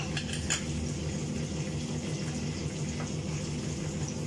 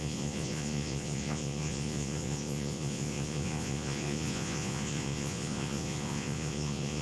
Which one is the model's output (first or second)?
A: second